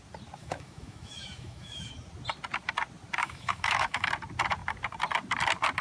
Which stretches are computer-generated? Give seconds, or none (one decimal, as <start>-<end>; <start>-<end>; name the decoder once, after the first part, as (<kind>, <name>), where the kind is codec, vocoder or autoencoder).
0.4-1.9 (autoencoder, DAC-VAE); 3.2-4.1